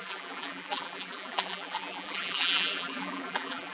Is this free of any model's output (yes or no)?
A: no